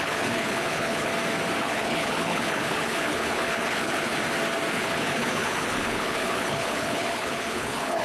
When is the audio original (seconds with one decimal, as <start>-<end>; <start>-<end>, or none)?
1.1-1.6; 4.2-4.7